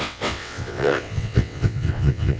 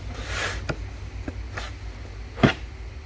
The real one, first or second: second